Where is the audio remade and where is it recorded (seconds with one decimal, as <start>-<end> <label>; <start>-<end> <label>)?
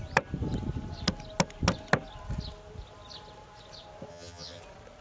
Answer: 0.0-4.1 recorded; 4.1-4.6 remade; 4.6-5.0 recorded